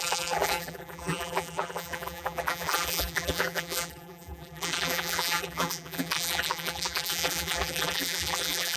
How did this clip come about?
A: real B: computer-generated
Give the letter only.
B